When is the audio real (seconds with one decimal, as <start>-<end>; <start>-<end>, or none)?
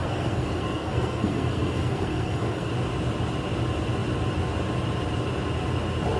2.7-6.2